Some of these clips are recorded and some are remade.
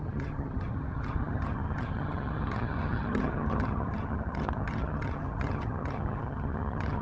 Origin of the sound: remade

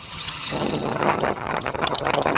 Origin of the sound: remade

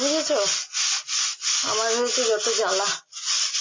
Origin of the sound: recorded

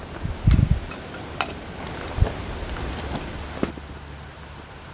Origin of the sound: recorded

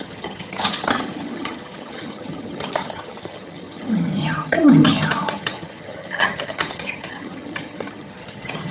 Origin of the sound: remade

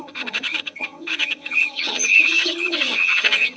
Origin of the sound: remade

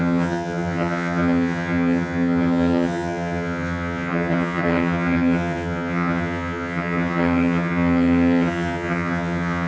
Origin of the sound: remade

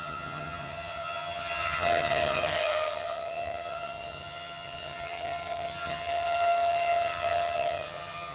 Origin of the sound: remade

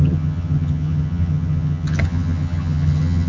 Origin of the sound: remade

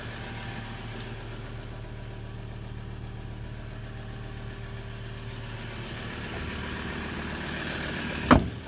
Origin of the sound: recorded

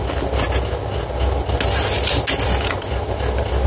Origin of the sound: recorded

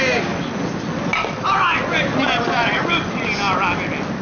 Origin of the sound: recorded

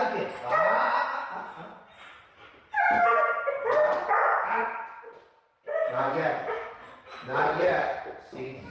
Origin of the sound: recorded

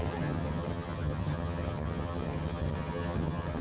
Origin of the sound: remade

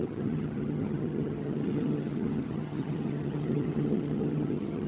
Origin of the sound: remade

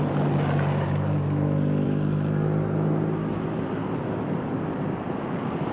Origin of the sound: recorded